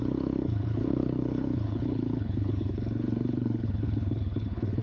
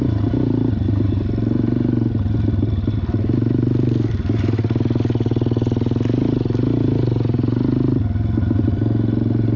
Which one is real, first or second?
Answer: second